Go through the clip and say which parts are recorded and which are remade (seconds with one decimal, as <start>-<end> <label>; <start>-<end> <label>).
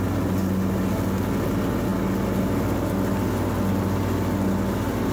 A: 0.0-5.1 recorded